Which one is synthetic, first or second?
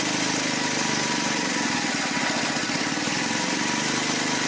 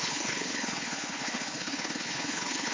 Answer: second